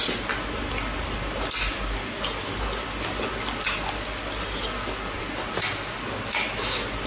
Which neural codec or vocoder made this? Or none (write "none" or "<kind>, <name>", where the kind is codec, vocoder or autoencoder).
none